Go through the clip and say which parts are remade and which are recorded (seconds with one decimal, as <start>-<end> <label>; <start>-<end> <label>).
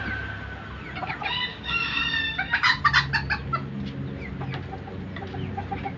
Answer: 0.0-1.5 recorded; 1.5-2.8 remade; 2.8-6.0 recorded